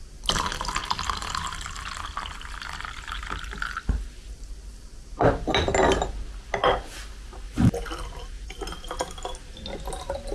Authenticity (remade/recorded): recorded